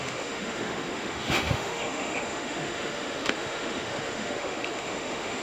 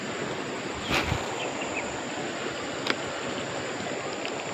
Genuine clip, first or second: second